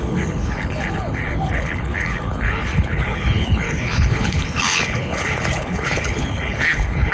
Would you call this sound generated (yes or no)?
yes